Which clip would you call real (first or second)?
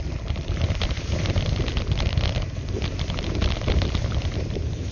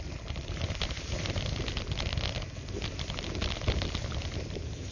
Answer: second